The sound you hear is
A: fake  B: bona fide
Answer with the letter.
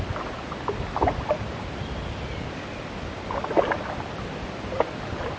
B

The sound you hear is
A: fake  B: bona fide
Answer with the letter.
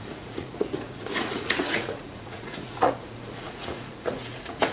A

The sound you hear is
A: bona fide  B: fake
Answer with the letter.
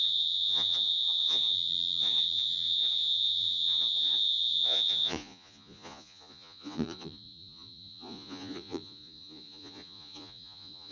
B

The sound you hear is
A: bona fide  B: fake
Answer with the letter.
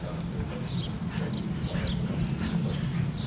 A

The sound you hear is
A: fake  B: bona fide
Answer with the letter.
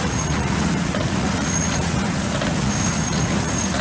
A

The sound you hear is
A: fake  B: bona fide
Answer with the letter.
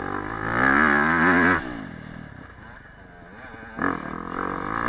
B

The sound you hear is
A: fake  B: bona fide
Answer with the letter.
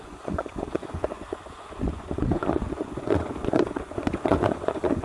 A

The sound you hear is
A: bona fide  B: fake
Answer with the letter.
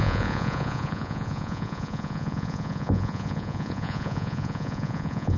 B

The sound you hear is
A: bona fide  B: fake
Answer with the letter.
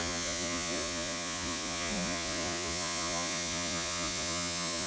B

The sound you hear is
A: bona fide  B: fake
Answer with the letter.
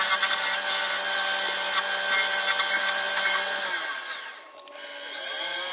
A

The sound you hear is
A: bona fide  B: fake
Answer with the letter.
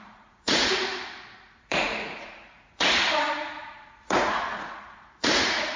B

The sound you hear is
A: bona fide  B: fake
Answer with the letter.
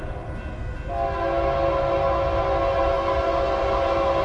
A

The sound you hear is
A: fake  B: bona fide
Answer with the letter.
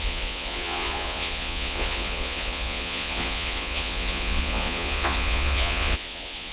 A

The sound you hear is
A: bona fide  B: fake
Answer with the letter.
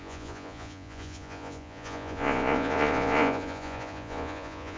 B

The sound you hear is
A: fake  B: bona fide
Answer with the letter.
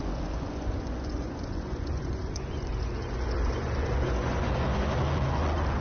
A